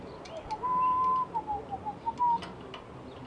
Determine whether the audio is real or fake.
real